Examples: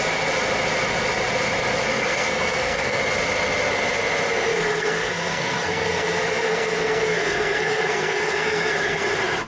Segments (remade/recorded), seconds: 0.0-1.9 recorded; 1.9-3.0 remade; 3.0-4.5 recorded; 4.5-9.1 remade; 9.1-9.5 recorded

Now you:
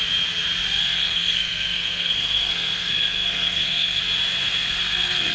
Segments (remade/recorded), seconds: 0.0-0.8 recorded; 0.8-4.0 remade; 4.0-4.4 recorded; 4.4-5.3 remade

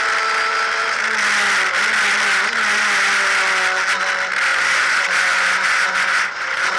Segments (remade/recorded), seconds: 0.0-4.5 recorded; 4.5-6.8 remade

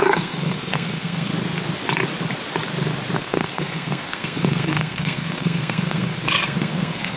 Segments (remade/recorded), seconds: 0.0-1.3 remade; 1.3-3.2 recorded; 3.2-7.2 remade